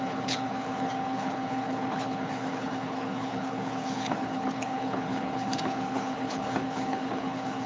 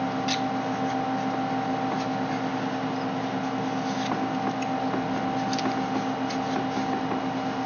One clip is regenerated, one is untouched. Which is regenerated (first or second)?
first